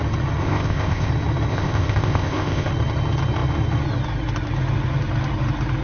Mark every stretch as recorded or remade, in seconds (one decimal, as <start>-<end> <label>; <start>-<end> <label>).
0.0-0.4 recorded; 0.4-1.1 remade; 1.1-1.5 recorded; 1.5-2.7 remade; 2.7-5.8 recorded